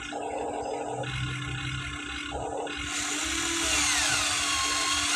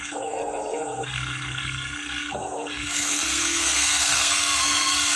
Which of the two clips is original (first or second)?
first